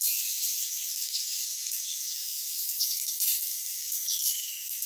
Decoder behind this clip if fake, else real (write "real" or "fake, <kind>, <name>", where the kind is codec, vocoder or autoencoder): fake, codec, SNAC